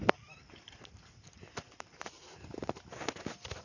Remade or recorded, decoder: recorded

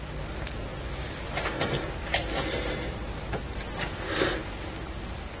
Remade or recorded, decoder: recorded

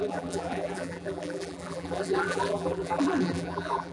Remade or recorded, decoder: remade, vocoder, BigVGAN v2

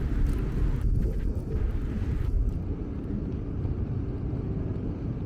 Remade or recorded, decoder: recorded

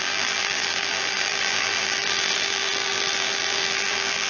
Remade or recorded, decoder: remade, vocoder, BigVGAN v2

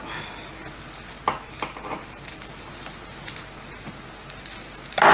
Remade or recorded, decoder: recorded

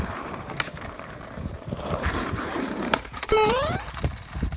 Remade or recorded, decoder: remade, vocoder, BigVGAN v2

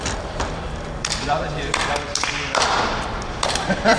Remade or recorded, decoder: remade, vocoder, BigVGAN v2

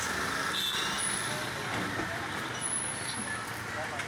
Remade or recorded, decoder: recorded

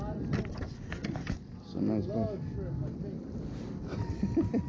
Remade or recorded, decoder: recorded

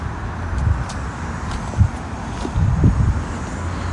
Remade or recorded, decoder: recorded